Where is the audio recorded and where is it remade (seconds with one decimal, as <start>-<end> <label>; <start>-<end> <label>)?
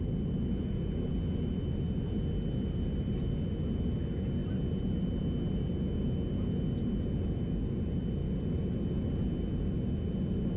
0.0-10.6 recorded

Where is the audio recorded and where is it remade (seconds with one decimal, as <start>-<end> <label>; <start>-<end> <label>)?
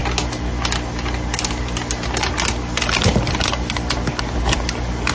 0.0-5.1 recorded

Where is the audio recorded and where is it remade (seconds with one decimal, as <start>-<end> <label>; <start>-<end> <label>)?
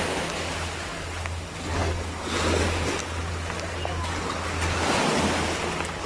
0.0-6.1 recorded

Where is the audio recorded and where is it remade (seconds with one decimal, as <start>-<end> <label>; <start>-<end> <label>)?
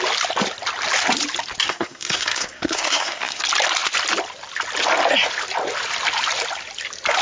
0.0-1.7 recorded; 1.7-3.4 remade; 3.4-7.2 recorded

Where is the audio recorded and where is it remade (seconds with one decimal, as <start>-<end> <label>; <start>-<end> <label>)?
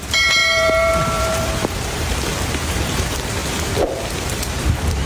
0.0-3.4 remade; 3.4-4.3 recorded; 4.3-5.1 remade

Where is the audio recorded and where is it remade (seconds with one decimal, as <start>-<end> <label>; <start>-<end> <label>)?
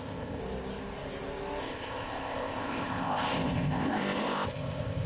0.0-0.4 remade; 0.4-1.6 recorded; 1.6-5.1 remade